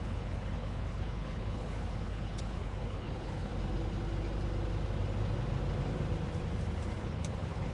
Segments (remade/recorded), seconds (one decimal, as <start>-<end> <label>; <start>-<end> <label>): 0.0-3.5 remade; 3.5-7.0 recorded; 7.0-7.7 remade